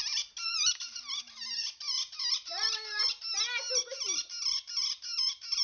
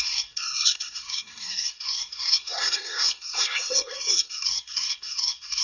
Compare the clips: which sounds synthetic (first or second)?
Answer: second